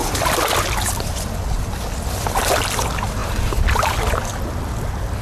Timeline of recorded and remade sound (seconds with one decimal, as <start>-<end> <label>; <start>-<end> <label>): 0.0-3.2 recorded; 3.2-4.2 remade; 4.2-5.2 recorded